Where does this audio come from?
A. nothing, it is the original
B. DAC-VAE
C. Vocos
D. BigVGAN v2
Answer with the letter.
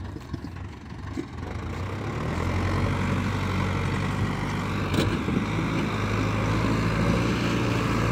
A